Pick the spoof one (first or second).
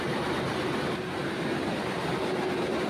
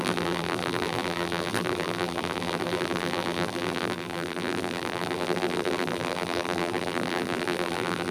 second